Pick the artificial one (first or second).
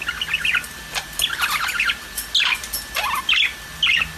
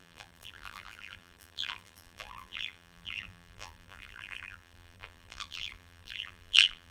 second